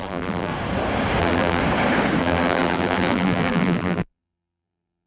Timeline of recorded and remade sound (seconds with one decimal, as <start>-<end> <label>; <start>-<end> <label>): 0.0-0.5 remade; 0.5-1.2 recorded; 1.2-1.6 remade; 1.6-2.2 recorded; 2.2-5.1 remade